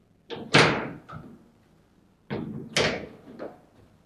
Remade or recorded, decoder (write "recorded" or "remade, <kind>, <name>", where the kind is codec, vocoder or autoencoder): recorded